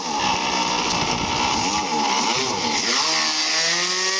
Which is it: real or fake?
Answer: real